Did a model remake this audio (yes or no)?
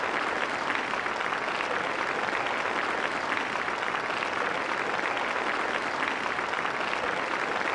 no